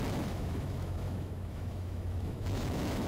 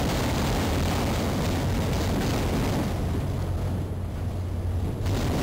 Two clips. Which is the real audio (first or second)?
second